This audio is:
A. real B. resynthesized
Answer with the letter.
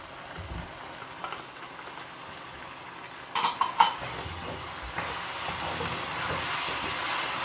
A